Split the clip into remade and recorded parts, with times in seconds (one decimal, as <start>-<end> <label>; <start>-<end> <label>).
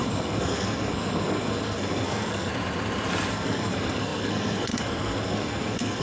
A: 0.0-2.5 remade; 2.5-3.3 recorded; 3.3-6.0 remade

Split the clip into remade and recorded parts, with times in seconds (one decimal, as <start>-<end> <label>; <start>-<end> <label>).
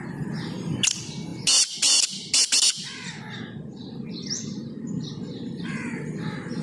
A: 0.0-6.6 recorded